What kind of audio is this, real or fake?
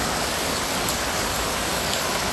fake